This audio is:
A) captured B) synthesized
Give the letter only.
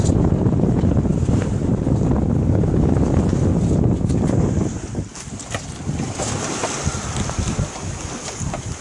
A